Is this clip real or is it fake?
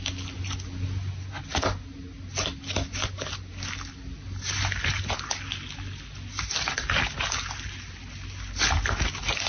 real